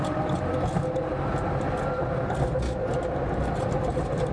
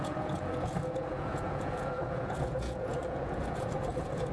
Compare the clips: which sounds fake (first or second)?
second